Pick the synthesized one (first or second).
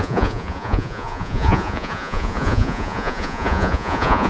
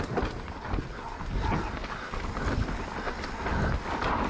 first